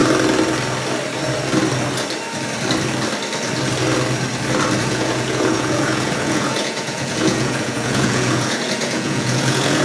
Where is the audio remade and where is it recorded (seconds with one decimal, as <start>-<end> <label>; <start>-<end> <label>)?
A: 0.0-4.8 recorded; 4.8-9.8 remade